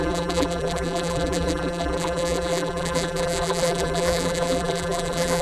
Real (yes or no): no